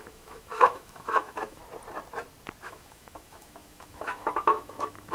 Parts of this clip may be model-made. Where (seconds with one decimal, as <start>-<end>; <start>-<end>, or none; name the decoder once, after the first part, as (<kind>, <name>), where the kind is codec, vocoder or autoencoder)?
0.0-1.6 (autoencoder, DAC-VAE); 2.6-5.1